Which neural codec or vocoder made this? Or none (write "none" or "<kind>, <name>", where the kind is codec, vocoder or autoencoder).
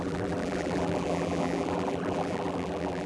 vocoder, BigVGAN v2